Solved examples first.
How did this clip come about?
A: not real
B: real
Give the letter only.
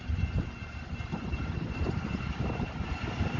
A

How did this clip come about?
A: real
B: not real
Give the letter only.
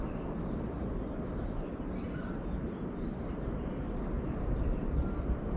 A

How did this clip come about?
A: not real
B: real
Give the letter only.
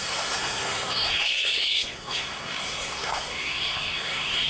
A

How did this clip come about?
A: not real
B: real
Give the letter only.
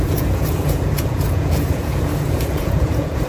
A